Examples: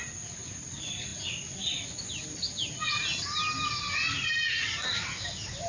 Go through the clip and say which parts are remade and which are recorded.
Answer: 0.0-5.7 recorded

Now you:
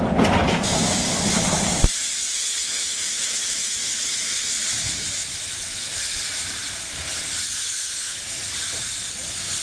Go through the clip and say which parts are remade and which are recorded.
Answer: 0.0-2.3 recorded; 2.3-4.5 remade; 4.5-5.3 recorded; 5.3-6.1 remade; 6.1-7.6 recorded; 7.6-8.2 remade; 8.2-9.6 recorded